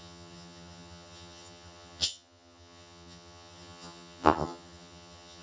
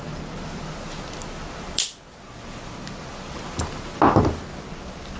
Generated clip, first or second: first